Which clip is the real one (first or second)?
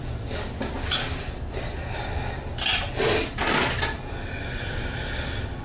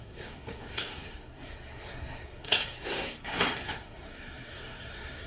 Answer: first